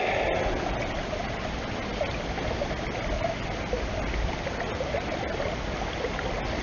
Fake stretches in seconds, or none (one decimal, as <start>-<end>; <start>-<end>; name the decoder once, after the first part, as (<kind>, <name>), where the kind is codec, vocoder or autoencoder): none